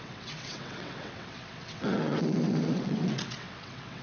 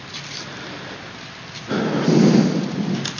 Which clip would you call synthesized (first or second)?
first